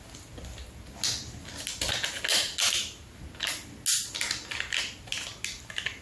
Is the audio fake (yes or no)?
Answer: no